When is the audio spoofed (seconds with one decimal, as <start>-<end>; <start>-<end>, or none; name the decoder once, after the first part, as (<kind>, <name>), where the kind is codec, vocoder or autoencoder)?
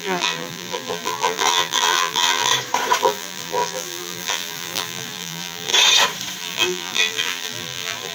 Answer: 0.0-2.5 (vocoder, BigVGAN v2); 3.0-5.7; 6.4-8.1